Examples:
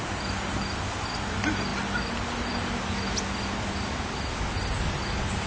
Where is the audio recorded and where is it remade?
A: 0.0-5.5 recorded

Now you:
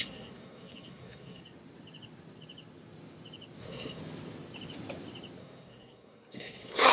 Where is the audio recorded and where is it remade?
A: 0.0-1.4 remade; 1.4-3.6 recorded; 3.6-4.0 remade; 4.0-5.4 recorded; 5.4-6.9 remade

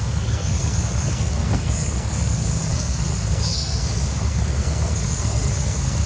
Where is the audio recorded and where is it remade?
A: 0.0-6.1 remade